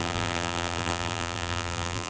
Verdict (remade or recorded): remade